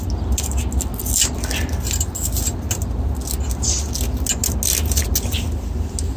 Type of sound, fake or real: real